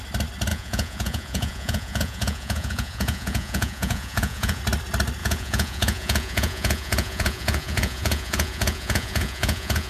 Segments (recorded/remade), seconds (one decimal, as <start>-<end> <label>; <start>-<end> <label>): 0.0-0.5 recorded; 0.5-4.6 remade; 4.6-5.2 recorded; 5.2-9.9 remade